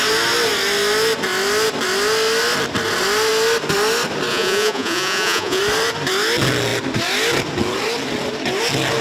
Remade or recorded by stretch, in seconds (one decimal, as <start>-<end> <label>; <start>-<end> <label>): 0.0-4.3 recorded; 4.3-5.6 remade; 5.6-9.0 recorded